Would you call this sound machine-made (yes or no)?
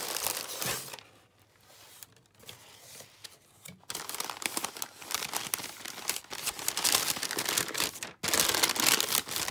no